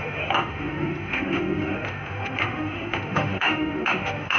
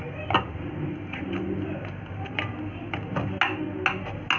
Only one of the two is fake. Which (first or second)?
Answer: first